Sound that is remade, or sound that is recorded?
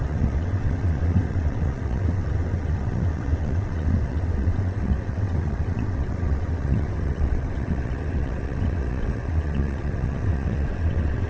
remade